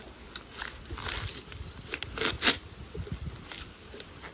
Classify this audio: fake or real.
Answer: real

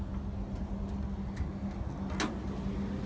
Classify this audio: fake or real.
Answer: real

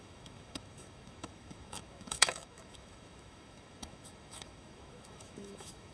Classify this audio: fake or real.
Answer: fake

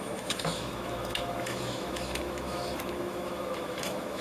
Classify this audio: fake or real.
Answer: fake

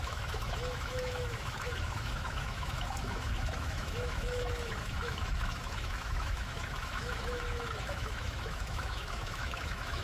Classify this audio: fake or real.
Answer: fake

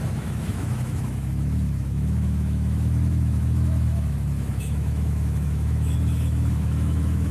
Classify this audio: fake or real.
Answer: fake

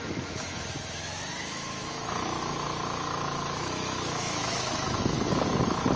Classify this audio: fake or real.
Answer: fake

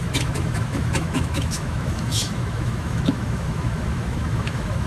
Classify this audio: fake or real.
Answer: fake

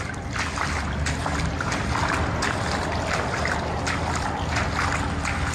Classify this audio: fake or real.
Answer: real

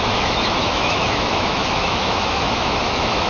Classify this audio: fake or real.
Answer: fake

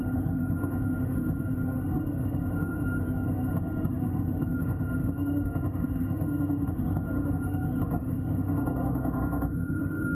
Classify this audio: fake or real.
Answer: fake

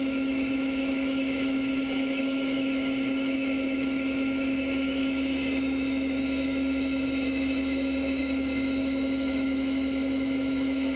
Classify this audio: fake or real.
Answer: fake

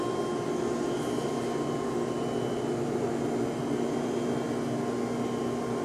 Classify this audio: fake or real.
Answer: real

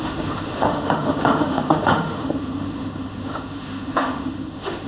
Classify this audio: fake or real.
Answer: fake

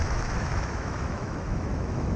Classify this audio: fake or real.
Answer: fake